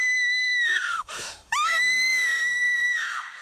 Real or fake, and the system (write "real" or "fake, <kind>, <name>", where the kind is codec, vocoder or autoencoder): fake, autoencoder, DAC-VAE